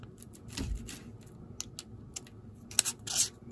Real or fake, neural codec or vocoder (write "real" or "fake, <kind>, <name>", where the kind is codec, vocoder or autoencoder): real